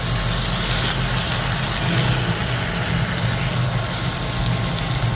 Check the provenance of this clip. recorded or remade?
recorded